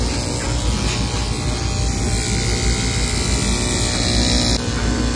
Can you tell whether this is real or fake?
real